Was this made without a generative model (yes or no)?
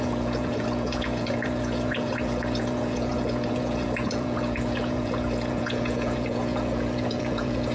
no